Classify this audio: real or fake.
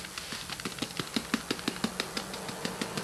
real